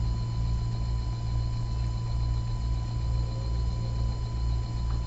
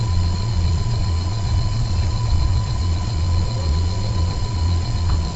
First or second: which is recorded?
first